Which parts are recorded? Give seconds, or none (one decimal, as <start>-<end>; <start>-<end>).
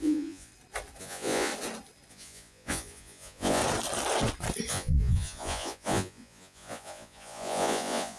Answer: 0.5-1.0; 1.5-2.1; 3.6-4.7